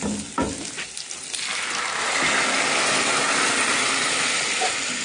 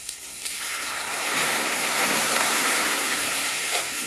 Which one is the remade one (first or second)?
second